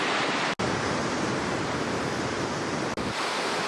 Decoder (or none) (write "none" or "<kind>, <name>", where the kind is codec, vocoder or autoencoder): none